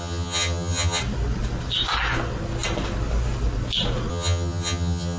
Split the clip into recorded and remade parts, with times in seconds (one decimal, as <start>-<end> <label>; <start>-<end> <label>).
0.0-1.0 remade; 1.0-4.1 recorded; 4.1-5.2 remade